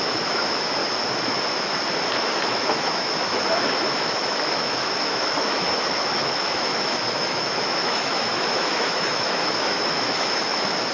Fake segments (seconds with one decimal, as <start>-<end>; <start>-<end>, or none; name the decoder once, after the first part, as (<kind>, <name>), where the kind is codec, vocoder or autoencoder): 0.0-0.8 (autoencoder, DAC-VAE); 2.1-10.9